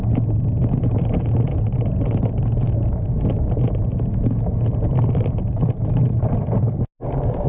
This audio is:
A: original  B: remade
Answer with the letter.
A